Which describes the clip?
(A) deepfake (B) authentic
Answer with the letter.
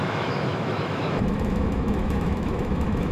A